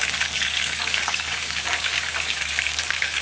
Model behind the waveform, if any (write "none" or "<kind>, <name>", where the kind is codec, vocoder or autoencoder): codec, DAC